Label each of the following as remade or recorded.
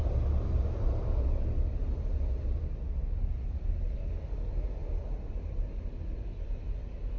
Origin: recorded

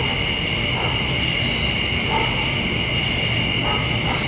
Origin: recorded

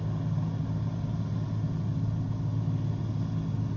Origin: recorded